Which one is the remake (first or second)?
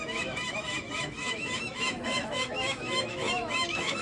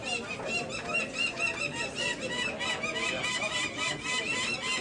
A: first